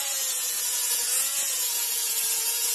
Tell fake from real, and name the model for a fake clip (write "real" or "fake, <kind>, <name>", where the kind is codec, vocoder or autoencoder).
fake, vocoder, Vocos